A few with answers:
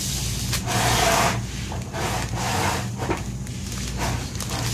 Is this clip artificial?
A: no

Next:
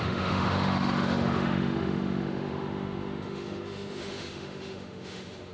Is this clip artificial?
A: yes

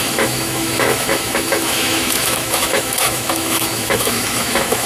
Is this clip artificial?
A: yes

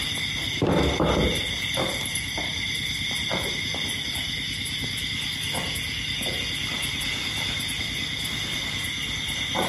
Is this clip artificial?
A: no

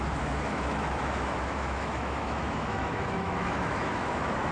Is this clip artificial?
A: yes